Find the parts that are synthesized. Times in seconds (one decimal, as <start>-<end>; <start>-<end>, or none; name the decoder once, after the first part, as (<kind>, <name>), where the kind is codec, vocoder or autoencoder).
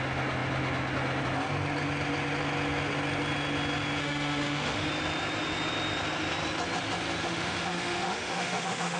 4.0-4.9 (autoencoder, DAC-VAE); 7.2-9.0